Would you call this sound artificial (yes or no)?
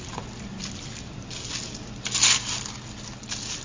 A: no